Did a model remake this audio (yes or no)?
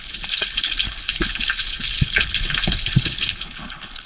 yes